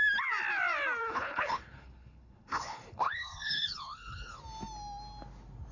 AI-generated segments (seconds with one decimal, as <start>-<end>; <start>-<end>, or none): 1.0-4.4